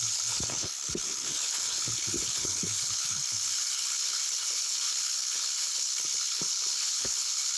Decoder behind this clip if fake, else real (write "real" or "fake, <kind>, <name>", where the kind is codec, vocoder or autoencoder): fake, codec, HILCodec